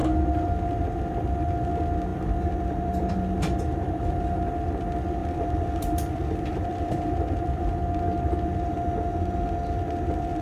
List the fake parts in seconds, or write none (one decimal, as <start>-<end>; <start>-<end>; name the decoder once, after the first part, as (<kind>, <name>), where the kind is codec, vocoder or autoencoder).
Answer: 2.1-4.2 (vocoder, BigVGAN v2); 5.2-7.7